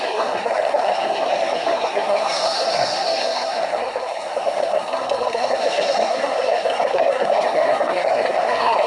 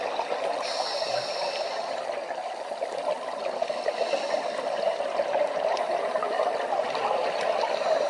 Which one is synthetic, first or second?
first